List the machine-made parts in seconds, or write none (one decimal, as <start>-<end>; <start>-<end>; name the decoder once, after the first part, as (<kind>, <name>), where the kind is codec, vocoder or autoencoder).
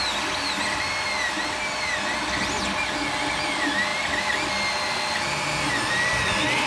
none